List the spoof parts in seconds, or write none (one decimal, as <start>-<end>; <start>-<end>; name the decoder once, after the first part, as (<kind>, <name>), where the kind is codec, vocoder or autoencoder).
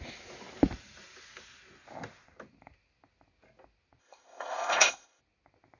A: 4.0-5.2 (codec, ZipCodec)